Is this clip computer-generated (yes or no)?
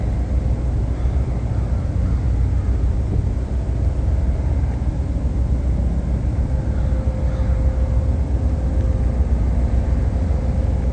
no